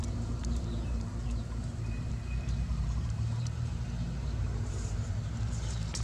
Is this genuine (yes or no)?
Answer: no